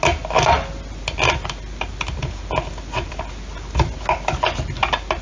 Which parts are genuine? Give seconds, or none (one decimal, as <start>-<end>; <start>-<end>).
0.0-5.2